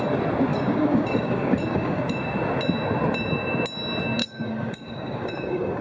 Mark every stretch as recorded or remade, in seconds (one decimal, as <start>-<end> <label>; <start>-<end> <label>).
0.0-0.5 recorded; 0.5-2.0 remade; 2.0-4.2 recorded; 4.2-5.8 remade